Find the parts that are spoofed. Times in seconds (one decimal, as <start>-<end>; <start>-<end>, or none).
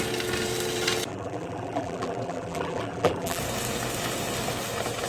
1.1-3.4